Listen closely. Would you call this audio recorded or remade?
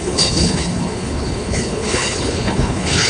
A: remade